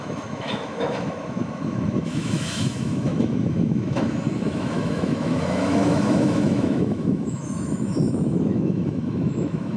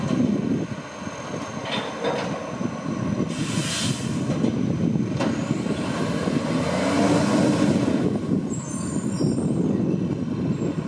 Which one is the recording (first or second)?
second